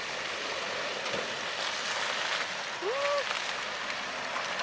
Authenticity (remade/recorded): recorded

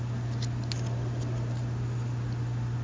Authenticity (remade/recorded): recorded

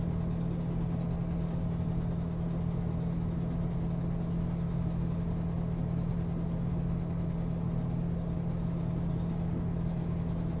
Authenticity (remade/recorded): recorded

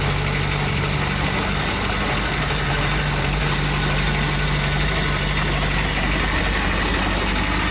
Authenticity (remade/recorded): recorded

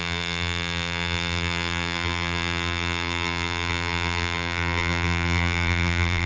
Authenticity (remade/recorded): remade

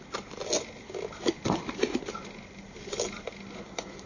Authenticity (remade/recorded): recorded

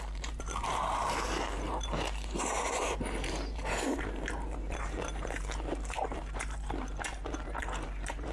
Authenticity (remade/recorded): remade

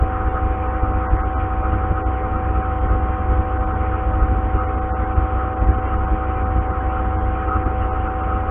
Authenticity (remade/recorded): recorded